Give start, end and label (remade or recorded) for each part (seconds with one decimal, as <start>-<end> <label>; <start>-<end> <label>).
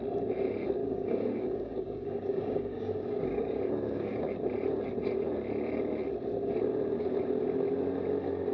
0.0-0.8 recorded; 0.8-4.2 remade; 4.2-8.5 recorded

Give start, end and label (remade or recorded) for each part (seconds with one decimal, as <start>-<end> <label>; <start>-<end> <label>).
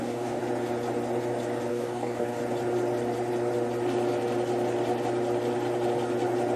0.0-0.4 remade; 0.4-1.7 recorded; 1.7-2.4 remade; 2.4-6.6 recorded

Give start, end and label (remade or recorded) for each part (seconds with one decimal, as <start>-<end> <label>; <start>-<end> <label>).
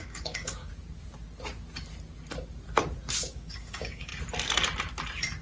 0.0-0.7 remade; 0.7-3.2 recorded; 3.2-4.1 remade; 4.1-5.4 recorded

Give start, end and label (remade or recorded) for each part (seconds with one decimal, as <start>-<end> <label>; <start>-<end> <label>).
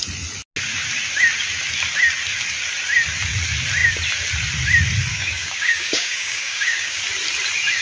0.0-5.1 recorded; 5.1-7.0 remade; 7.0-7.8 recorded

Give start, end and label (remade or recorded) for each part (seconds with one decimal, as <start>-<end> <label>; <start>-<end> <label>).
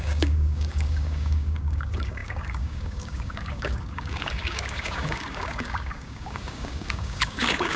0.0-7.8 remade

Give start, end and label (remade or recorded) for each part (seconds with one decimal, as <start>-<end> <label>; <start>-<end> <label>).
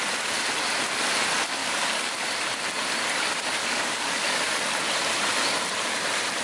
0.0-1.6 recorded; 1.6-2.1 remade; 2.1-3.6 recorded; 3.6-4.6 remade; 4.6-6.4 recorded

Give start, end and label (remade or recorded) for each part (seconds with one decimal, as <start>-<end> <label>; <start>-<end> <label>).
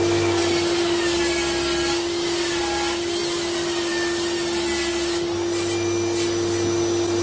0.0-7.2 recorded